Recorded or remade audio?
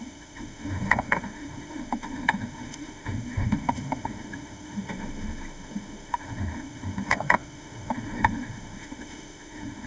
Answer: remade